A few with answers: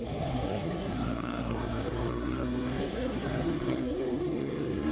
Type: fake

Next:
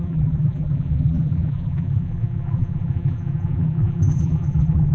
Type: fake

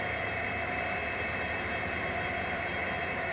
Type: fake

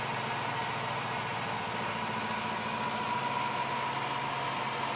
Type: real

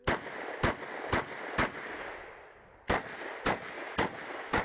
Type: real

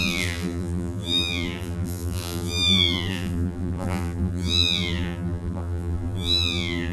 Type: fake